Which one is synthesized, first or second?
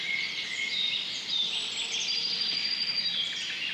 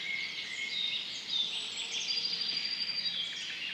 first